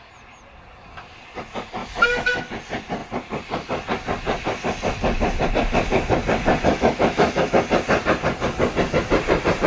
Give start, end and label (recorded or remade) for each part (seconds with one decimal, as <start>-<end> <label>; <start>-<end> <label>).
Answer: 0.0-1.8 recorded; 1.8-2.5 remade; 2.5-6.7 recorded; 6.7-7.4 remade; 7.4-9.7 recorded

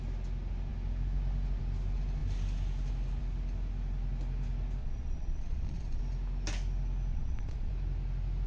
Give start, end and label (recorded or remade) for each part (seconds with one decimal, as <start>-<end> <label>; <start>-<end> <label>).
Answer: 0.0-4.8 recorded; 4.8-6.0 remade; 6.0-7.1 recorded; 7.1-7.7 remade; 7.7-8.5 recorded

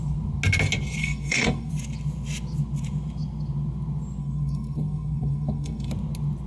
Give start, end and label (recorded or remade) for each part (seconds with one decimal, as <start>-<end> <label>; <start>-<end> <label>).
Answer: 0.0-1.0 recorded; 1.0-1.7 remade; 1.7-4.2 recorded; 4.2-5.9 remade; 5.9-6.5 recorded